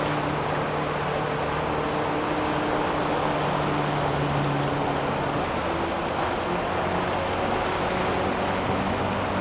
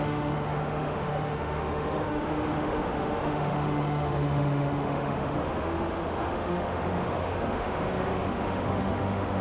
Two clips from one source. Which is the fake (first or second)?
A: second